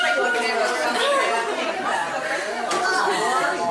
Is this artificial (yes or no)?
no